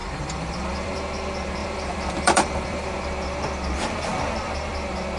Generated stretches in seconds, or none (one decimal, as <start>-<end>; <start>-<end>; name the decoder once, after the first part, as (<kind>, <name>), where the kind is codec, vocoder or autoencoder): 0.0-1.0 (vocoder, BigVGAN v2); 1.6-2.9